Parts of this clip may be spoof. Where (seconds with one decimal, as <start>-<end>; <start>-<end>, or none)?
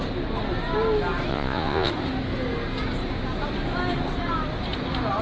1.3-1.9